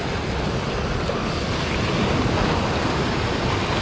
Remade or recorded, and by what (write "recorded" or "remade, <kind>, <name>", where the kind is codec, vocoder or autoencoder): recorded